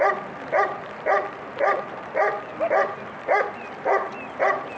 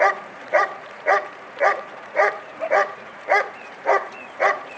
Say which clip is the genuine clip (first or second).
first